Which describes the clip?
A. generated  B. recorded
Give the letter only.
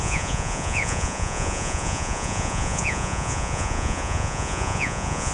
A